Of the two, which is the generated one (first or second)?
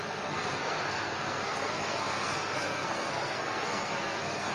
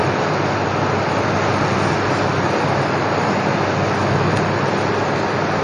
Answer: first